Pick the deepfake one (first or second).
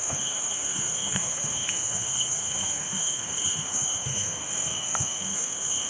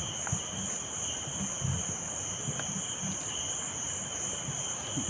first